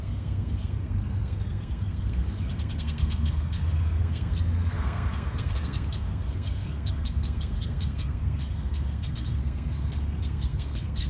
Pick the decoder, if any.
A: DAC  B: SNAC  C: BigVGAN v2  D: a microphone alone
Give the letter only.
B